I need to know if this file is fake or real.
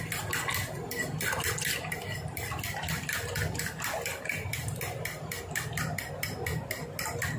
real